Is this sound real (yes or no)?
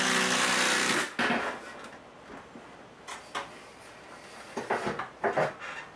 yes